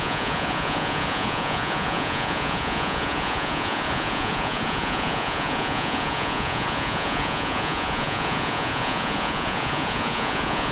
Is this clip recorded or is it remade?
remade